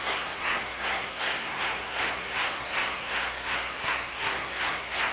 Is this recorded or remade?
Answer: remade